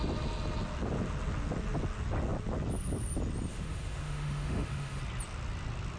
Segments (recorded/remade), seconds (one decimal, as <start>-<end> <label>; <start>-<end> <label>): 0.0-3.5 recorded; 3.5-5.0 remade; 5.0-6.0 recorded